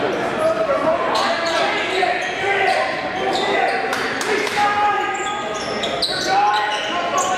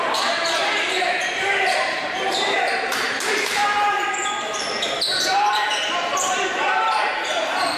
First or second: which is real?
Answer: first